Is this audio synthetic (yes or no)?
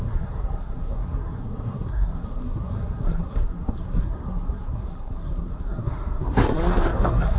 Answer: yes